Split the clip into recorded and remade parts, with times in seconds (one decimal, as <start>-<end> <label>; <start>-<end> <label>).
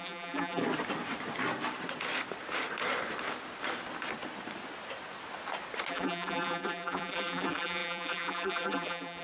0.0-0.6 remade; 0.6-5.9 recorded; 5.9-9.2 remade